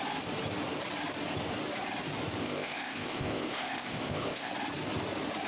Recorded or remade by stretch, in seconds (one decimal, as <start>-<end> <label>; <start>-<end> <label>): 0.0-2.4 recorded; 2.4-4.5 remade; 4.5-5.5 recorded